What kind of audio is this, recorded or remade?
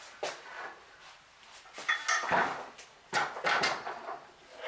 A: recorded